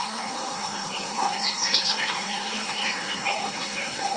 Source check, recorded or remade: remade